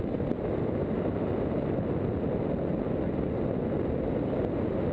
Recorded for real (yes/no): yes